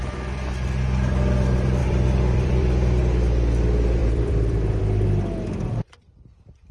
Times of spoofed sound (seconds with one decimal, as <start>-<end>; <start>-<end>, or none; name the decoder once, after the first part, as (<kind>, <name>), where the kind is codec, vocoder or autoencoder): 1.8-3.0 (vocoder, BigVGAN v2); 4.0-4.8